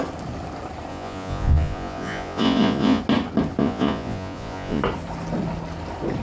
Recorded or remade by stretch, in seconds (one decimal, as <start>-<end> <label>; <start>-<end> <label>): 0.0-0.9 recorded; 0.9-3.0 remade; 3.0-3.6 recorded; 3.6-4.8 remade; 4.8-6.2 recorded